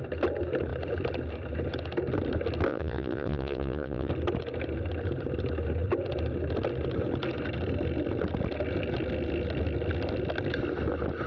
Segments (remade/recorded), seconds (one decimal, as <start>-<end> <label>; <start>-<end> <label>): 0.0-2.7 recorded; 2.7-4.1 remade; 4.1-11.3 recorded